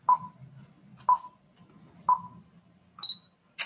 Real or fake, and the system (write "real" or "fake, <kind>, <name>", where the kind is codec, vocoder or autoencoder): real